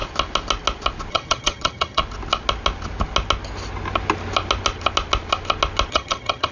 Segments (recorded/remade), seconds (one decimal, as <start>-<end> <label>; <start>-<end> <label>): 0.0-1.1 recorded; 1.1-2.0 remade; 2.0-5.9 recorded; 5.9-6.5 remade

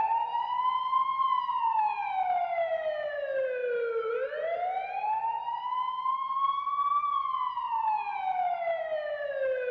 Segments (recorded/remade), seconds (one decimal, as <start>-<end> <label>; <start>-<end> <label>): 0.0-9.7 recorded

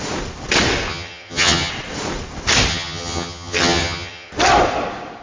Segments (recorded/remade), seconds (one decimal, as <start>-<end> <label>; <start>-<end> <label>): 0.0-0.9 recorded; 0.9-1.7 remade; 1.7-2.7 recorded; 2.7-4.3 remade; 4.3-5.2 recorded

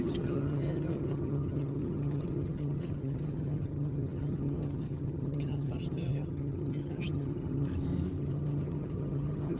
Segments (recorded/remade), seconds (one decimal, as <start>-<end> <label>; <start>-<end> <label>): 0.0-7.7 remade; 7.7-8.2 recorded; 8.2-9.6 remade

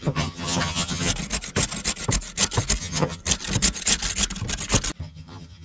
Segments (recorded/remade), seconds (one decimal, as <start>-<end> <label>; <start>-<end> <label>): 0.0-1.1 remade; 1.1-2.8 recorded; 2.8-3.2 remade; 3.2-5.0 recorded; 5.0-5.6 remade

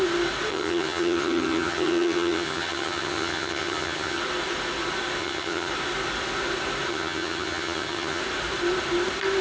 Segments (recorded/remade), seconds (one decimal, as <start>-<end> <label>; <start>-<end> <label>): 0.0-0.5 recorded; 0.5-4.2 remade; 4.2-5.2 recorded; 5.2-5.7 remade; 5.7-6.9 recorded; 6.9-8.2 remade; 8.2-9.4 recorded